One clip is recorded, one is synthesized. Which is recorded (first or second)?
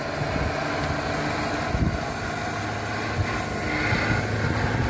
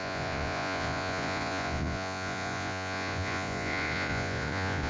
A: first